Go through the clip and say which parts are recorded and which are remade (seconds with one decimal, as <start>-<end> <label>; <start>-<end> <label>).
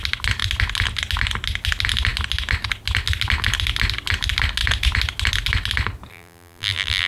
0.0-6.1 recorded; 6.1-7.1 remade